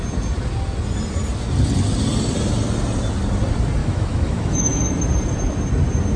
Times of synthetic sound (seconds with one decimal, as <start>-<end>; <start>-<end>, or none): 3.8-5.0